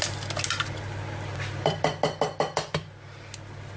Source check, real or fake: real